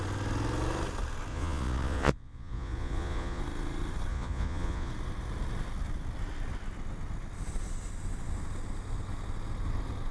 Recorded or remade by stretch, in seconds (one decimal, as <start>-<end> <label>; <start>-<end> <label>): 0.0-1.3 recorded; 1.3-3.4 remade; 3.4-4.1 recorded; 4.1-4.9 remade; 4.9-10.1 recorded